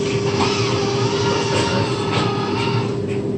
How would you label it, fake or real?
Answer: real